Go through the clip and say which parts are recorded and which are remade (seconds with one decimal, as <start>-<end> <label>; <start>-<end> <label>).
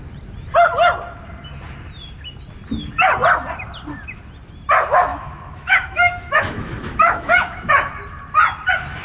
0.0-5.1 recorded; 5.1-7.7 remade; 7.7-9.0 recorded